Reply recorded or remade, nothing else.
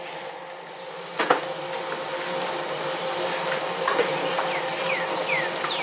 recorded